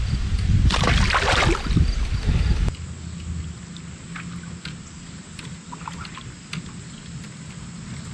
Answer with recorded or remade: recorded